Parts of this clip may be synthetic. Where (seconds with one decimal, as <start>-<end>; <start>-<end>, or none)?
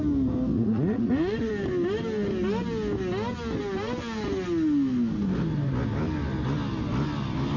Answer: 0.5-1.5